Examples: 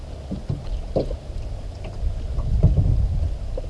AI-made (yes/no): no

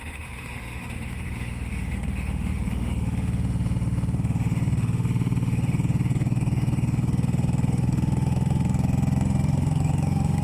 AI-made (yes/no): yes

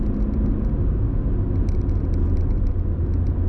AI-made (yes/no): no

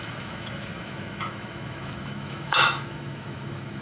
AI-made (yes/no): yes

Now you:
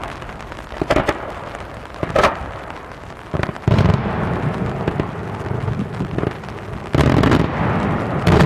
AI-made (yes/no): no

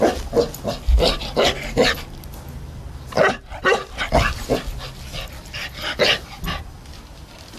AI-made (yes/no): no